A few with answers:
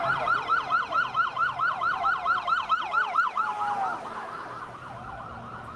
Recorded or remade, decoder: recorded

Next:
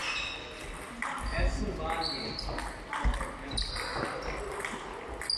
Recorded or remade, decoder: recorded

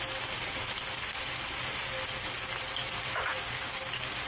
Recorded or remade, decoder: recorded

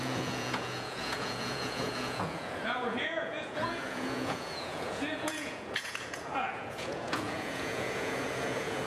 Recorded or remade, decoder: remade, vocoder, Vocos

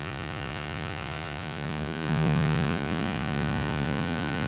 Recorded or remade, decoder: remade, vocoder, Vocos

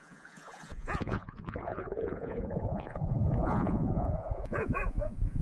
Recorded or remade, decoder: remade, vocoder, Vocos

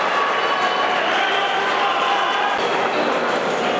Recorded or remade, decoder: recorded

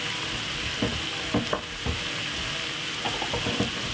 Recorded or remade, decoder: recorded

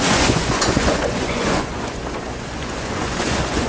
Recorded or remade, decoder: remade, vocoder, Vocos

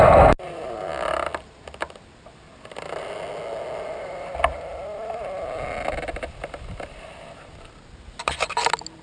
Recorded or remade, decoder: recorded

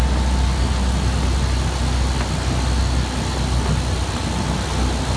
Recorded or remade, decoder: recorded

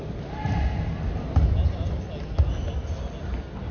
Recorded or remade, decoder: recorded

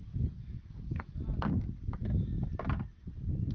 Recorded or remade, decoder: recorded